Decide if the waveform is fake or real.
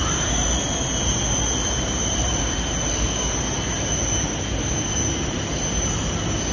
real